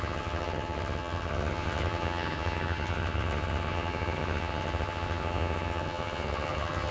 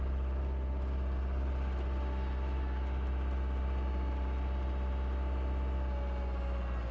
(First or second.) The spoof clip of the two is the first